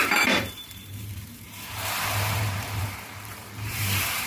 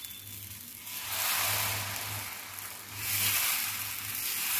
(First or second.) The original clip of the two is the second